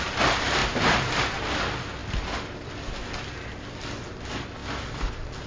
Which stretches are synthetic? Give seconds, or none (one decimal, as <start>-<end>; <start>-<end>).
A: none